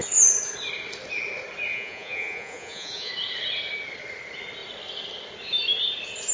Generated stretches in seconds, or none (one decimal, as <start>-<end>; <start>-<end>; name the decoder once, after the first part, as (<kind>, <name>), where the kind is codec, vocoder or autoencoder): 1.7-3.1 (vocoder, Vocos)